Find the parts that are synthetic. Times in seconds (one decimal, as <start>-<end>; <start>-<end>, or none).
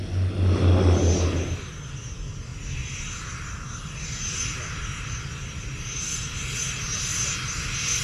none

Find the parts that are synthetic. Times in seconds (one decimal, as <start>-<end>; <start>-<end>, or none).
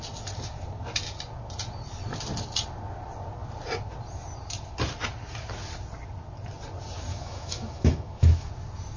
7.1-8.5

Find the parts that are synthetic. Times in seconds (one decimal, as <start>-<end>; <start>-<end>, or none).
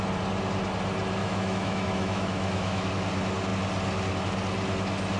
1.2-2.9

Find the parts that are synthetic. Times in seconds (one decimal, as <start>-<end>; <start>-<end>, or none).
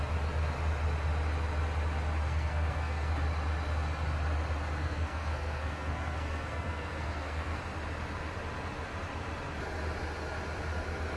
2.2-3.1; 4.8-7.6